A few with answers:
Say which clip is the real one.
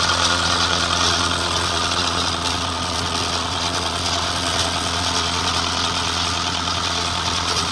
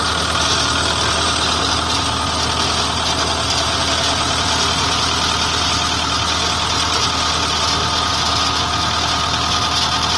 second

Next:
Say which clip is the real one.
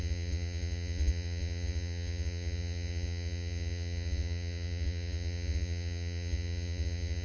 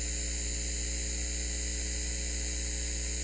second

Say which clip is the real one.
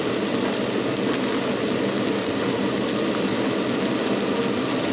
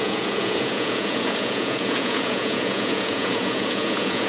first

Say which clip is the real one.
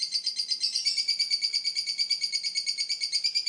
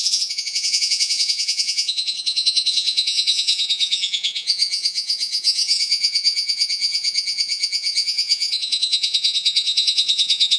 first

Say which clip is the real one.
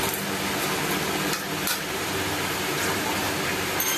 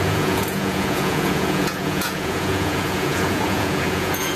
first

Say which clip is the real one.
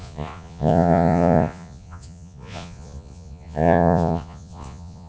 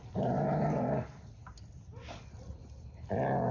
second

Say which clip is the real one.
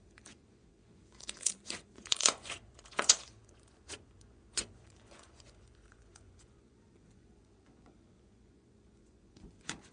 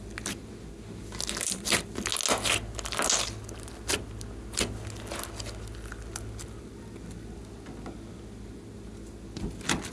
second